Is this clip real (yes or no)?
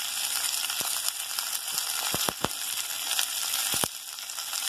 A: yes